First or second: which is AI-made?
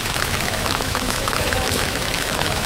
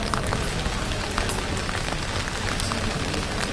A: first